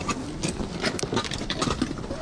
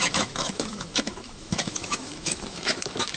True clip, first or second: first